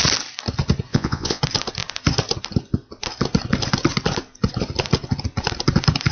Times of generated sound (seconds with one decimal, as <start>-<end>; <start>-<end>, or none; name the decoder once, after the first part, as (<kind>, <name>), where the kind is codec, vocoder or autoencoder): 0.9-1.4 (vocoder, Vocos)